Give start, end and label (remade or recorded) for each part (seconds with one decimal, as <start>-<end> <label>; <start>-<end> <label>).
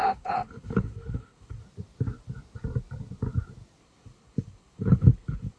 0.0-1.6 remade; 1.6-3.8 recorded; 3.8-5.6 remade